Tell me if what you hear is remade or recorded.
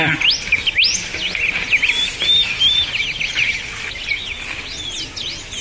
recorded